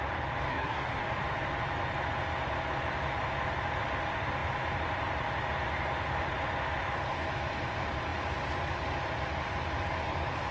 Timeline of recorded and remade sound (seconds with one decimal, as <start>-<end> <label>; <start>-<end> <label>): 0.0-0.5 recorded; 0.5-1.0 remade; 1.0-10.5 recorded